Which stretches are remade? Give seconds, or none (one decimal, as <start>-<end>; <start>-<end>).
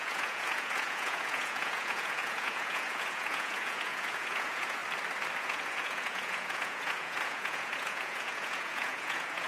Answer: 0.0-4.8; 5.4-9.5